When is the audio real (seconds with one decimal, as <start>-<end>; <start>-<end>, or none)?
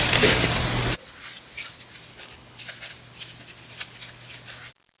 0.0-2.1; 2.6-5.0